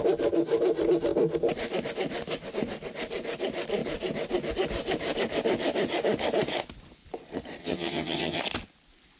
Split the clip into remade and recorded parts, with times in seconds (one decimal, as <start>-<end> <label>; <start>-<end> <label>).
0.0-7.6 recorded; 7.6-8.4 remade; 8.4-9.2 recorded